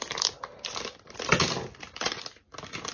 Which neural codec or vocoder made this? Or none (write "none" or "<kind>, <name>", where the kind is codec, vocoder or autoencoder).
none